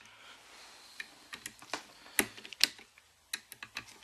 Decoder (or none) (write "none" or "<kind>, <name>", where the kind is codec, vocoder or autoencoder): none